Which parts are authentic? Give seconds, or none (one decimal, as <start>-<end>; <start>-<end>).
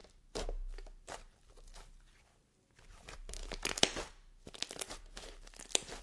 0.0-2.8; 3.8-6.0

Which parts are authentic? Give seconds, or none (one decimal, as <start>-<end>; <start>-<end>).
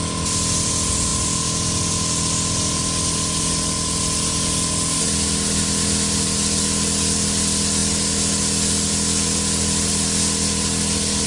0.0-11.3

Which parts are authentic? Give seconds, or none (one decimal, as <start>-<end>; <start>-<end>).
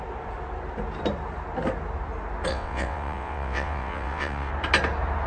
0.0-2.5; 4.5-5.3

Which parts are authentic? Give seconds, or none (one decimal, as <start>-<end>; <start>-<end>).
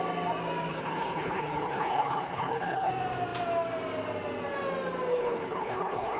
0.0-0.7; 2.9-5.1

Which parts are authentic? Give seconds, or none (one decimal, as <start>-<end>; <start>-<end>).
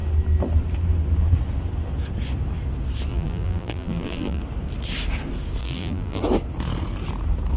0.0-3.1; 4.4-5.6; 6.2-7.6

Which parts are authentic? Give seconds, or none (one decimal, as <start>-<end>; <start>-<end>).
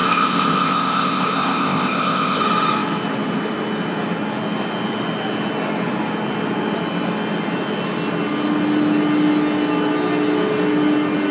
2.4-11.3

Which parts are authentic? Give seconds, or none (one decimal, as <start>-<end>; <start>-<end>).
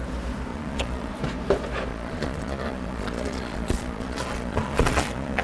0.0-0.5; 1.1-1.9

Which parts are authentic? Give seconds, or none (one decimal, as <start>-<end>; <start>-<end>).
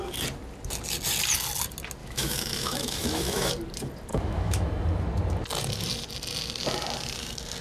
0.0-2.0; 3.5-4.1; 4.7-7.6